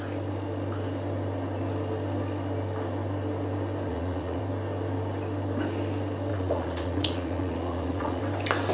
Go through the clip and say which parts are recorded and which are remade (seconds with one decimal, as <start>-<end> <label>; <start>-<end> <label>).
0.0-3.9 recorded; 3.9-4.4 remade; 4.4-6.3 recorded; 6.3-8.2 remade; 8.2-8.7 recorded